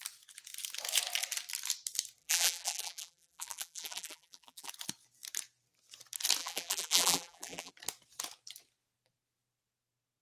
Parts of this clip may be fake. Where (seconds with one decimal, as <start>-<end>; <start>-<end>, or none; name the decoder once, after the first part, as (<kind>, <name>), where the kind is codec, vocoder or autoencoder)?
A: 2.2-4.7 (vocoder, BigVGAN v2); 6.4-7.7